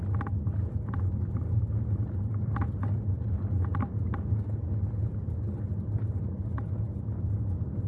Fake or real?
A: real